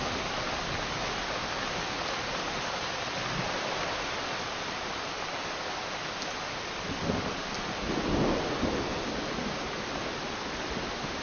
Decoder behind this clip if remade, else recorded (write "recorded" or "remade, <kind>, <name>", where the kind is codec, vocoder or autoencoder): recorded